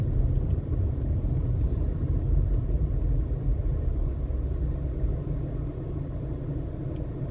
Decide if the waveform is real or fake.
real